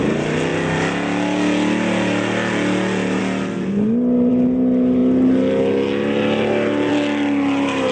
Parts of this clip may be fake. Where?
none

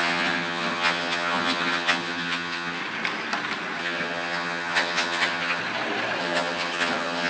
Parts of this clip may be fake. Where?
0.0-2.8; 3.8-5.6; 6.2-7.3

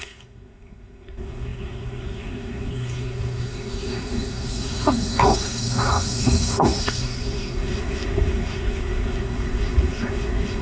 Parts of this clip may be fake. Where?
0.0-10.6

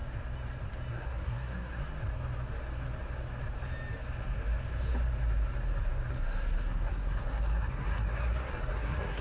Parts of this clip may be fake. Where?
0.9-1.8; 6.1-9.2